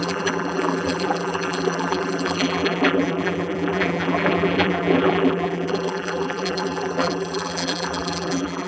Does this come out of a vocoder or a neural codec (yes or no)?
yes